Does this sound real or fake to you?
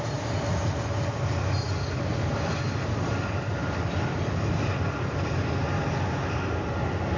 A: real